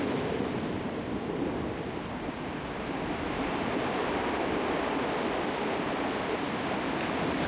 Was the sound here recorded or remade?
recorded